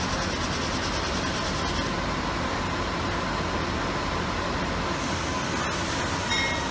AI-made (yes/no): no